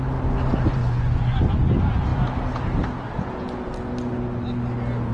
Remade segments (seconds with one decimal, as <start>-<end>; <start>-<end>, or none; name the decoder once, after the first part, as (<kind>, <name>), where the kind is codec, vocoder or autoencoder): 0.8-1.5 (vocoder, Vocos)